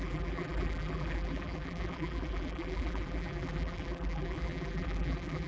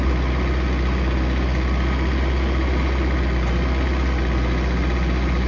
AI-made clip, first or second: first